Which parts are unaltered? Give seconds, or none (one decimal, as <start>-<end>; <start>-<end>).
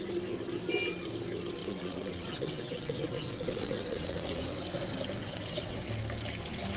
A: 0.0-1.6; 4.4-5.2; 5.9-6.8